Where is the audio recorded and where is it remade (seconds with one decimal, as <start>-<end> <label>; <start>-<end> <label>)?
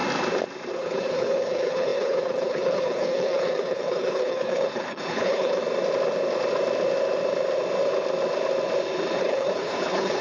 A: 0.0-0.7 recorded; 0.7-5.6 remade; 5.6-9.2 recorded; 9.2-10.2 remade